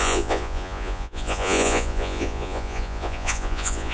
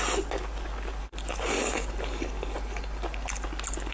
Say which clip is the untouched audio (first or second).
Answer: second